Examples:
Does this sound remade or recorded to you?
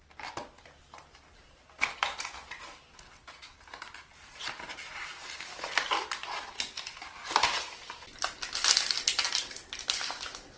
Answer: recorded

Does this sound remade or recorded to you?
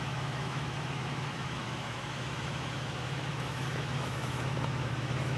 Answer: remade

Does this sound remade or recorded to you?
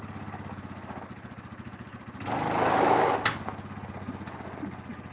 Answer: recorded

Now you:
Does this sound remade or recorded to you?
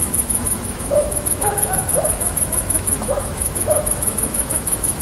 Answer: remade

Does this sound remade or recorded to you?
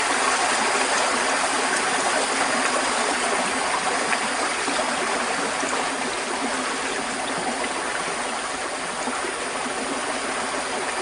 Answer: recorded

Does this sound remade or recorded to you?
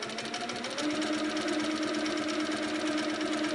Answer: recorded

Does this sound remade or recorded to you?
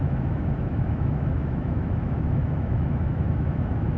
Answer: remade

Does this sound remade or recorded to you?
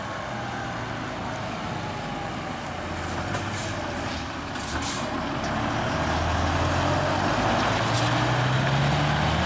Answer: recorded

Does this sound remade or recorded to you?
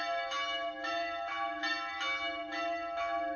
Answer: recorded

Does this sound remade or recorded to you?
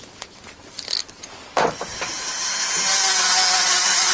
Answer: recorded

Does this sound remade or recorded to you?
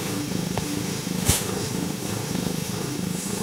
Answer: remade